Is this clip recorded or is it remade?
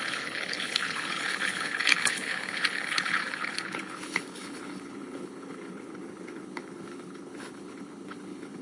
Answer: remade